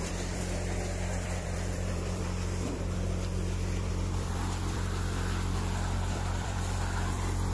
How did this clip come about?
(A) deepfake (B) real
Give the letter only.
A